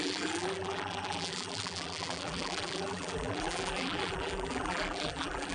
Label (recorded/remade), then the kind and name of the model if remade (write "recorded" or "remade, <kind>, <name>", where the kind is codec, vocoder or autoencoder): remade, vocoder, BigVGAN v2